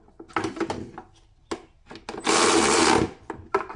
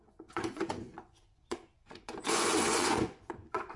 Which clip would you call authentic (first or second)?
first